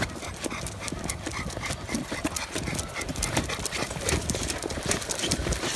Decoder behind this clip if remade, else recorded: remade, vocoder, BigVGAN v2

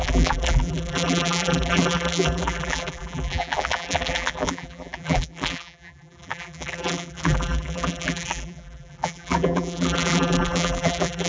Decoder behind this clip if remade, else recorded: remade, vocoder, BigVGAN v2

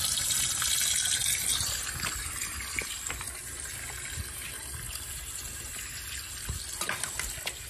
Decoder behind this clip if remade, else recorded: recorded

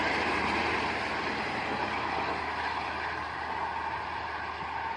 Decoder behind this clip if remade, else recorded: remade, vocoder, BigVGAN v2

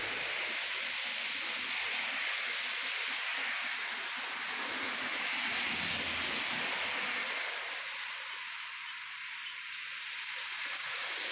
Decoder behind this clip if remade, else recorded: recorded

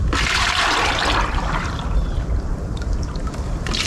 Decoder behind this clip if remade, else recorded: remade, vocoder, BigVGAN v2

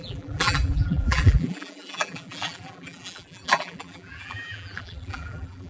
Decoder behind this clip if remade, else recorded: remade, vocoder, BigVGAN v2